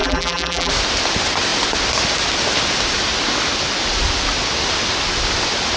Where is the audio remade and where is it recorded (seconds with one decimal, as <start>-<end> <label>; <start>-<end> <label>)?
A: 0.0-0.7 remade; 0.7-5.8 recorded